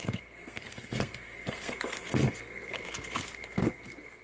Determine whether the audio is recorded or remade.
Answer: remade